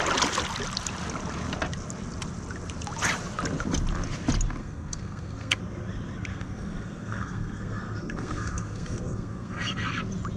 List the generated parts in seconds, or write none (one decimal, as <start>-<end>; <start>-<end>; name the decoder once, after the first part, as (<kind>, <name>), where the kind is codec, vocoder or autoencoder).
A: 4.6-5.6 (codec, SNAC); 6.3-10.0